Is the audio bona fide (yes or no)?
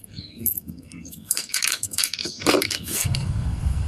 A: no